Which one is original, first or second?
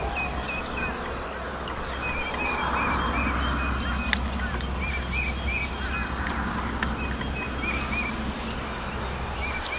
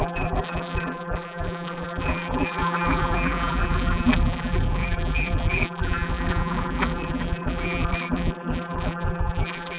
first